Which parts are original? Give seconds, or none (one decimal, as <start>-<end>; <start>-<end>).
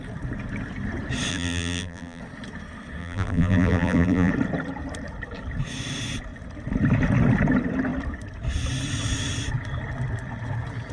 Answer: 0.0-1.3; 2.2-3.0; 4.3-10.9